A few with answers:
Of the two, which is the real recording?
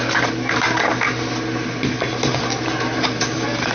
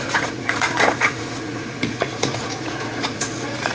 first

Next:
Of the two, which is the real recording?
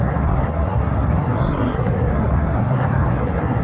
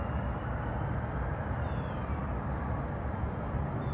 second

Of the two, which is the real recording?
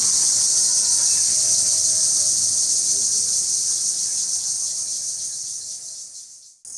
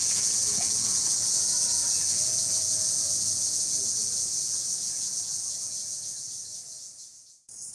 first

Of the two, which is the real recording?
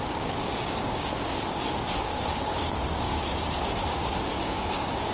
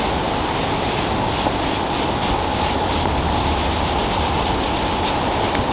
second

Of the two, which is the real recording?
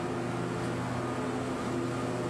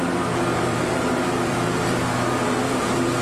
first